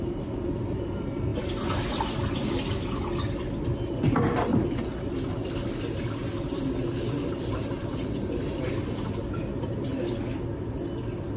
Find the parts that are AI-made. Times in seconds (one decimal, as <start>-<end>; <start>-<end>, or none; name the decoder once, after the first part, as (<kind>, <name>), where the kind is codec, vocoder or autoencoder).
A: none